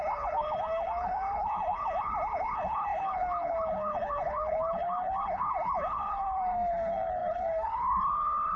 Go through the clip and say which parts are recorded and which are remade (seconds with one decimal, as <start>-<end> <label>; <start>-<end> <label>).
0.0-8.6 remade